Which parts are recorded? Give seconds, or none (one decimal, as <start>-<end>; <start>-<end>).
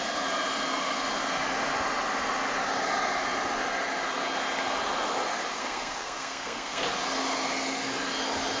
0.0-5.6; 6.8-8.6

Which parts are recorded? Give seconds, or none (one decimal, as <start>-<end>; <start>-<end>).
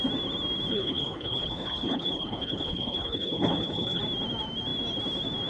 0.0-0.7; 4.0-5.5